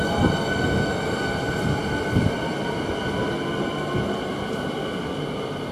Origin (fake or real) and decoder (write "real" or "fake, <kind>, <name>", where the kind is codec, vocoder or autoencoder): real